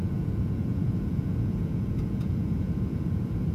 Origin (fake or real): fake